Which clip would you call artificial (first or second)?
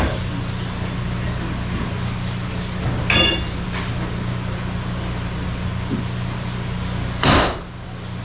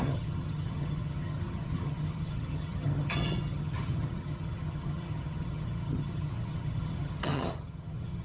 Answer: second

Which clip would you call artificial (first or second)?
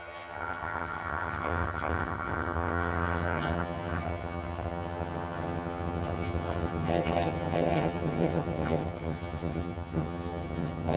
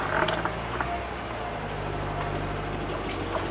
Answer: first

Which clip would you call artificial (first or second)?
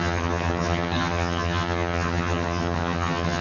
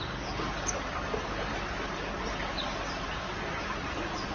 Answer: first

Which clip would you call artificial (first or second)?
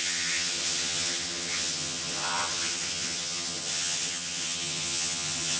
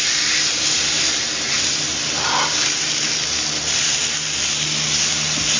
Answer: first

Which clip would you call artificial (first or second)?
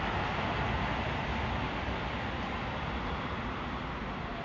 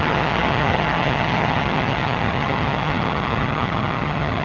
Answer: second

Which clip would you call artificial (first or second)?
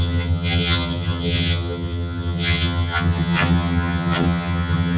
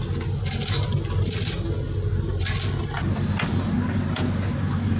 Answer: first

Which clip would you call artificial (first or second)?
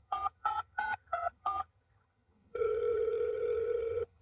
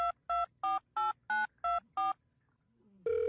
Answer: first